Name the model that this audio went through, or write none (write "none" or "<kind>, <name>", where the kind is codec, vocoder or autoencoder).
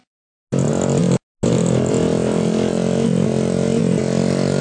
none